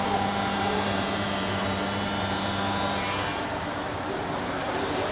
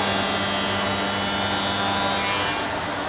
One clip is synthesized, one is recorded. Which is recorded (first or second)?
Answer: second